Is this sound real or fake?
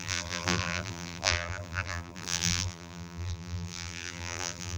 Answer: fake